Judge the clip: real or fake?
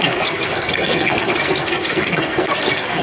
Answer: fake